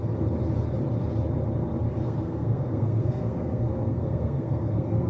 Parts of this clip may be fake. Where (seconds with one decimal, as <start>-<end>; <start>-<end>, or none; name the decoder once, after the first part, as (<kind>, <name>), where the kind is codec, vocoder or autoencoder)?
2.0-5.1 (codec, SNAC)

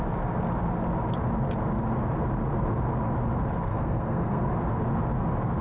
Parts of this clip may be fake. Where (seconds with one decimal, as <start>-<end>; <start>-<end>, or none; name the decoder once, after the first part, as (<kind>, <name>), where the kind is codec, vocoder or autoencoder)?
3.7-4.4 (codec, SNAC)